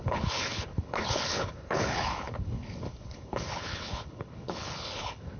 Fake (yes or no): yes